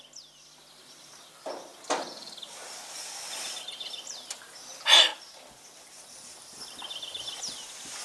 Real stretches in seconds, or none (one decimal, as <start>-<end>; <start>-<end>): 0.0-8.0